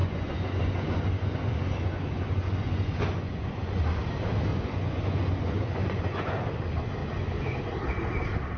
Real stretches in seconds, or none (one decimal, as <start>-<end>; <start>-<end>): 3.8-4.5; 6.4-7.0; 7.6-8.6